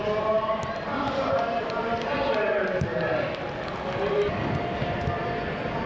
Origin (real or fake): real